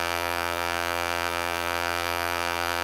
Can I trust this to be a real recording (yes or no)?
no